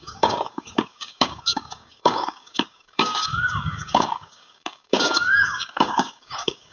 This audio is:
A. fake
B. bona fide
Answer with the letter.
A